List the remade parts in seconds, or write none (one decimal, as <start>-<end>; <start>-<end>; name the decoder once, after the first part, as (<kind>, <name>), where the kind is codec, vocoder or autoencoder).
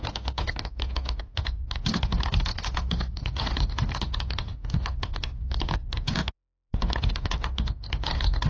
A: 2.5-4.0 (autoencoder, DAC-VAE)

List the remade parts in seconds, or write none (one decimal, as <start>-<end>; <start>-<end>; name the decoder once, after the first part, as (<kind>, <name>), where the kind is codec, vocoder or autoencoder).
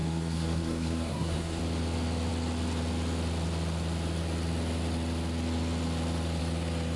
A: 0.0-1.6 (codec, SNAC)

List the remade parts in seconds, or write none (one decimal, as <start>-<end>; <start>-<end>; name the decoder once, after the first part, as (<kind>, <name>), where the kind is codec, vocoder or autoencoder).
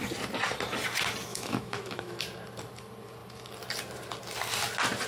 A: 1.3-2.2 (autoencoder, DAC-VAE)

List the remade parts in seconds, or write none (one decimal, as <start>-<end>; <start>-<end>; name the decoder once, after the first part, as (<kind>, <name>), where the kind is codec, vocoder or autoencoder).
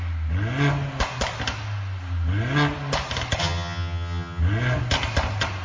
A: 3.4-4.4 (vocoder, HiFi-GAN)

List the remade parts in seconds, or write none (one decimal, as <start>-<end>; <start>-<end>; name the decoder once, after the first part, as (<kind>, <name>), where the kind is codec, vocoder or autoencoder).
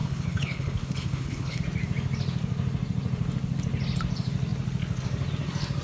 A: 0.0-1.6 (codec, HILCodec)